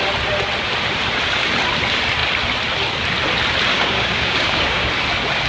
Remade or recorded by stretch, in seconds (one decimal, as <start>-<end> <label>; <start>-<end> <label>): 0.0-3.7 recorded; 3.7-4.9 remade; 4.9-5.5 recorded